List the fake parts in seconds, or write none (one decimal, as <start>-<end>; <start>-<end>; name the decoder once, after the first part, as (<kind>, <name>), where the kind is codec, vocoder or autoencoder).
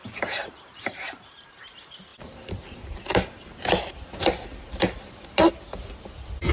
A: 0.0-1.5 (vocoder, BigVGAN v2)